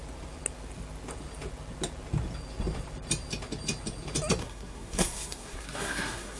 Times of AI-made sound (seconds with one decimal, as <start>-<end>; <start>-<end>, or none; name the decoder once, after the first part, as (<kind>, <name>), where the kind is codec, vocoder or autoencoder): 4.4-6.4 (codec, SNAC)